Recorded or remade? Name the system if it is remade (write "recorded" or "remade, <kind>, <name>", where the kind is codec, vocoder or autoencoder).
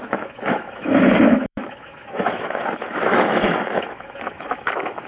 remade, autoencoder, DAC-VAE